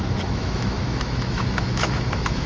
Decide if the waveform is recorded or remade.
remade